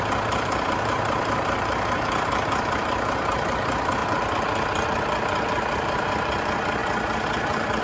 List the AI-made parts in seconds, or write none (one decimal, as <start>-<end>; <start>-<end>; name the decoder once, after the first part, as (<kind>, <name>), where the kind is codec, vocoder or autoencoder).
0.0-4.0 (vocoder, BigVGAN v2); 5.7-7.8